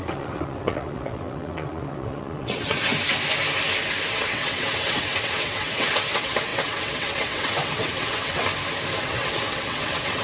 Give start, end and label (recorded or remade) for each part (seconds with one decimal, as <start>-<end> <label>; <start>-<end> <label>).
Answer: 0.0-2.9 remade; 2.9-4.1 recorded; 4.1-8.4 remade; 8.4-9.0 recorded; 9.0-10.2 remade